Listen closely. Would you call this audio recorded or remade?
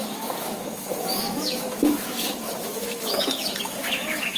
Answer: remade